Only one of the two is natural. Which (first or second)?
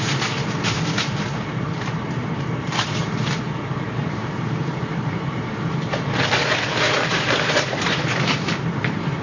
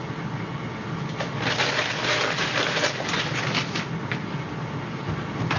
second